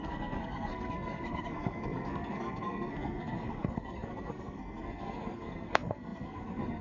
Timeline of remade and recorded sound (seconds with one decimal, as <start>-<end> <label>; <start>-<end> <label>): 0.0-6.8 remade